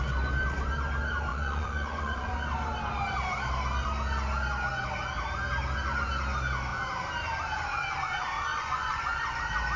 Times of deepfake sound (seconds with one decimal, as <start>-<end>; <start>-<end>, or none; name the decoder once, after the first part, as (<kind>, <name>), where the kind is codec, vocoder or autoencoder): 1.3-2.3 (vocoder, Vocos); 8.5-9.4